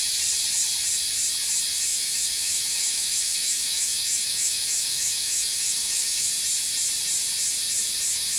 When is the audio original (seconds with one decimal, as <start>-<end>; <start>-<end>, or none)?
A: 0.0-1.9; 6.3-8.4